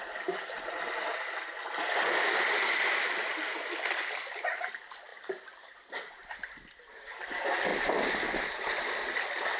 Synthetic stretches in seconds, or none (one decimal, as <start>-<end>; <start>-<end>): none